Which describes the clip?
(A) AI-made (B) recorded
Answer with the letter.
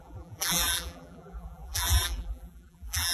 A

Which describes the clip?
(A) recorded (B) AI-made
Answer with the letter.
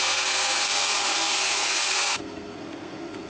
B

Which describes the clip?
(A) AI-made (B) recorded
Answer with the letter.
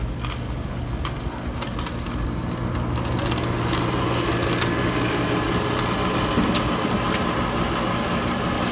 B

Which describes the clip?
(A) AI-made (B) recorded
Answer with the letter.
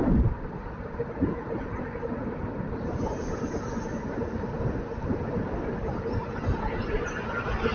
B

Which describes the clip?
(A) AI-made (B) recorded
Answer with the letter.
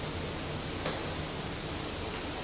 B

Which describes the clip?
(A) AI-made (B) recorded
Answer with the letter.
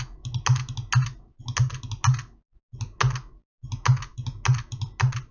B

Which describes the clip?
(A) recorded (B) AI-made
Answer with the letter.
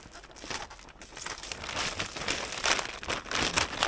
A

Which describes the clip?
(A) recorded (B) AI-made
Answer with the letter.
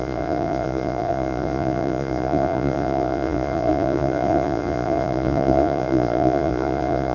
B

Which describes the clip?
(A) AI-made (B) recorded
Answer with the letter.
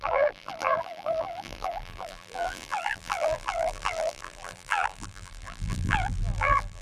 A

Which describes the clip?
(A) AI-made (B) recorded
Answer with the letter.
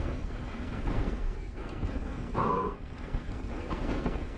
A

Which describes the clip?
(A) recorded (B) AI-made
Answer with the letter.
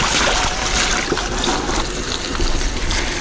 A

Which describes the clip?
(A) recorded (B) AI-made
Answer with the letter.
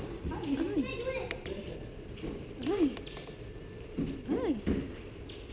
A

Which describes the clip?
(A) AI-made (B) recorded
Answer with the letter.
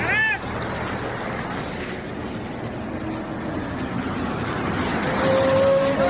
B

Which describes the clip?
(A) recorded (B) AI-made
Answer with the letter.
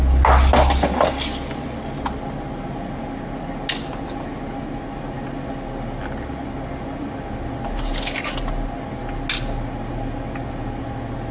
A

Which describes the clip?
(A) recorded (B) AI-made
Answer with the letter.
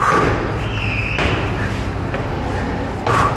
A